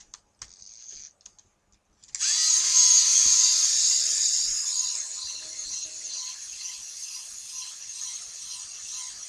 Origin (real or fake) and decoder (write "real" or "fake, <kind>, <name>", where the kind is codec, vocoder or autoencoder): real